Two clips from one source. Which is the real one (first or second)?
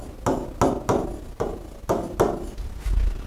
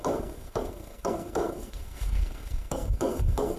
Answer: first